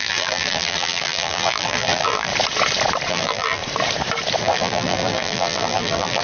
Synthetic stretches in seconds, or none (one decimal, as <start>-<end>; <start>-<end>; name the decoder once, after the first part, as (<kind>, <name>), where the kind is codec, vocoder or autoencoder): 0.0-2.3 (vocoder, BigVGAN v2); 3.1-3.6; 4.4-6.2